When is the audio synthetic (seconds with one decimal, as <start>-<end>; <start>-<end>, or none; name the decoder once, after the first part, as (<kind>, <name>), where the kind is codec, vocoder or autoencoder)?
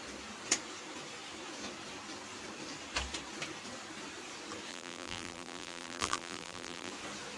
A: 4.7-6.9 (vocoder, BigVGAN v2)